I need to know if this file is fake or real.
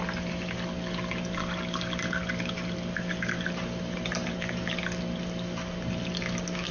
real